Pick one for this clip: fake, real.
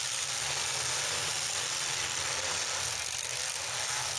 real